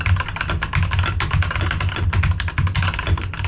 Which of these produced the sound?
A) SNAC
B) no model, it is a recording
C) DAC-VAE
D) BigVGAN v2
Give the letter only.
B